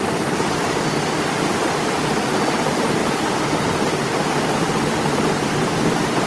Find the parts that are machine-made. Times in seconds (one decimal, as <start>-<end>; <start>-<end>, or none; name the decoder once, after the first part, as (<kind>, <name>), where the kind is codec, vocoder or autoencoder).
none